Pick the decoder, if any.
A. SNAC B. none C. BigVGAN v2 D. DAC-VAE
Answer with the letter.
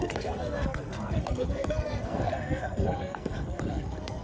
A